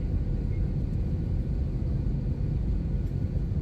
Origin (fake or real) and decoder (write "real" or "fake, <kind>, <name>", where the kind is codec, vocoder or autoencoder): real